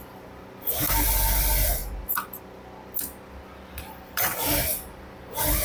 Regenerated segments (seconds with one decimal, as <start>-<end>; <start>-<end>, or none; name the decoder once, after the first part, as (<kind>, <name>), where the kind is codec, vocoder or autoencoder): 0.0-1.8 (vocoder, BigVGAN v2); 3.7-5.6